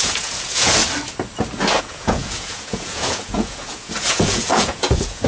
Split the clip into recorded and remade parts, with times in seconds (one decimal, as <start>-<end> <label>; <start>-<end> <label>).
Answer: 0.0-0.8 remade; 0.8-1.8 recorded; 1.8-5.3 remade